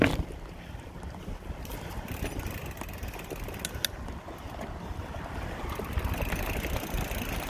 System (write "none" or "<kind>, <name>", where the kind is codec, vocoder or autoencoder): none